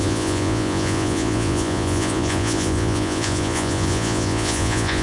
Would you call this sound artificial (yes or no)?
yes